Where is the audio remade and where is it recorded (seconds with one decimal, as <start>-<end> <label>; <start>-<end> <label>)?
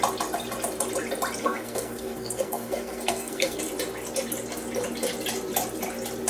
0.0-1.4 recorded; 1.4-3.6 remade; 3.6-6.3 recorded